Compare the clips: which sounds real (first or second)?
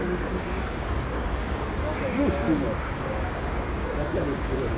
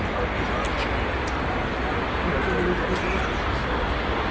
second